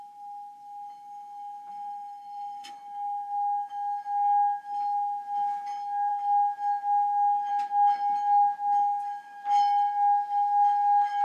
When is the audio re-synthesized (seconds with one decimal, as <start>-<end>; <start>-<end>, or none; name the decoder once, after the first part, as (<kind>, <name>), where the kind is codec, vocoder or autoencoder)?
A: 1.7-2.7 (codec, SNAC)